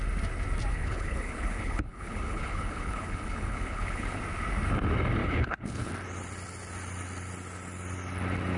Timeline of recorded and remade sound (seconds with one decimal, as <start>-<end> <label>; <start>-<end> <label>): 0.0-0.7 recorded; 0.7-4.2 remade; 4.2-5.2 recorded; 5.2-5.9 remade; 5.9-8.6 recorded